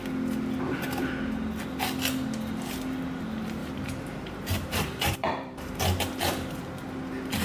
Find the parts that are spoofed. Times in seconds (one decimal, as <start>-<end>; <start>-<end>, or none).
3.6-5.8